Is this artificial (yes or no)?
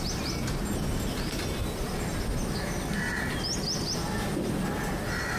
no